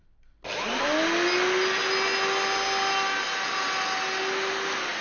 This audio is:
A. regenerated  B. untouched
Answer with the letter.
B